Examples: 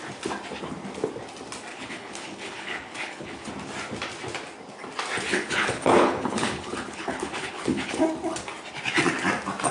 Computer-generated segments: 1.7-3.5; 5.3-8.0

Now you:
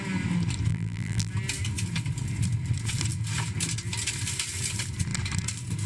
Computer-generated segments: 0.7-1.3

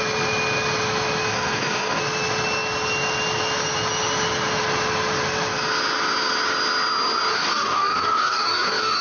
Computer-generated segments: 1.3-2.0; 7.3-9.0

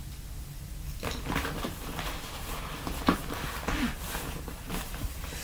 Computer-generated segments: none

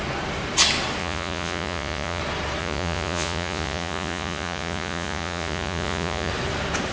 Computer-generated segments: 1.0-2.2; 2.6-6.3

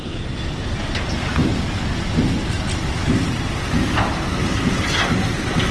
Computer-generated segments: 3.0-3.6; 4.4-5.1

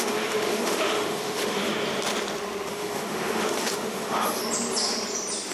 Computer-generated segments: 0.0-1.7; 2.7-4.4